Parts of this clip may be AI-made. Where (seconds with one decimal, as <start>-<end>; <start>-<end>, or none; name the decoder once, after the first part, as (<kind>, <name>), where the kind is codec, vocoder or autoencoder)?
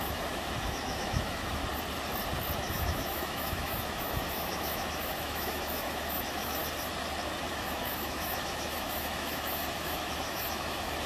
0.0-1.6 (autoencoder, DAC-VAE); 2.7-6.6; 7.5-11.1